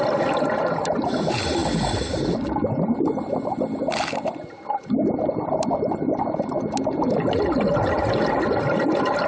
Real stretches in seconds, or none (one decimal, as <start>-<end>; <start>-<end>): 0.0-1.6; 6.7-9.3